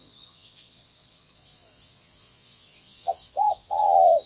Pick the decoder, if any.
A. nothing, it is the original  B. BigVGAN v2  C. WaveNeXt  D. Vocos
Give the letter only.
D